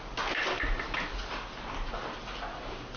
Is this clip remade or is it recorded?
recorded